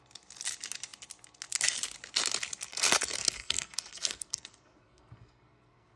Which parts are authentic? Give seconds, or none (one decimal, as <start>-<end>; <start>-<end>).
0.0-2.7